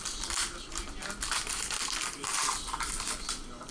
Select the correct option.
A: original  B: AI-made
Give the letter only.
A